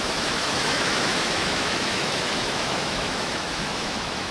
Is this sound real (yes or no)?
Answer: no